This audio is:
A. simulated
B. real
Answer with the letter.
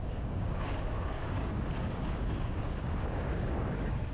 A